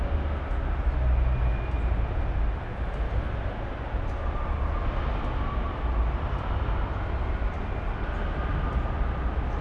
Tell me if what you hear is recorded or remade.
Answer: recorded